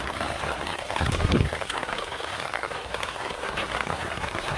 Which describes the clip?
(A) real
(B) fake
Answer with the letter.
B